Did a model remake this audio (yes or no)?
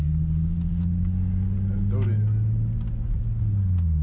no